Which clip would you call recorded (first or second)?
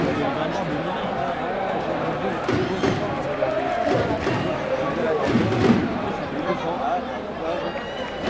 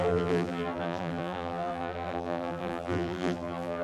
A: first